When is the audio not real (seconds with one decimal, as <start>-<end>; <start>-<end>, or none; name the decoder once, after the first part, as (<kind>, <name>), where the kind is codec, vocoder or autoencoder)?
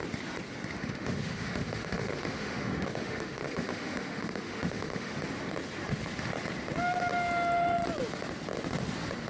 0.8-5.1 (autoencoder, DAC-VAE)